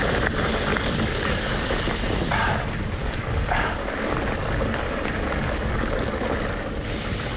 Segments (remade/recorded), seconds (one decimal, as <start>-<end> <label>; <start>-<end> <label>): 0.0-0.7 recorded; 0.7-1.8 remade; 1.8-3.0 recorded; 3.0-3.8 remade; 3.8-4.4 recorded; 4.4-6.2 remade; 6.2-7.4 recorded